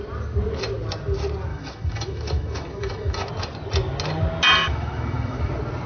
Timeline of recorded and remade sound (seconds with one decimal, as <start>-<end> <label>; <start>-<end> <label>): 0.0-1.5 recorded; 1.5-3.3 remade; 3.3-4.6 recorded; 4.6-5.5 remade; 5.5-5.9 recorded